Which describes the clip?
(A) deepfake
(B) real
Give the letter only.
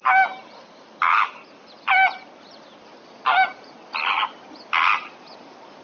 B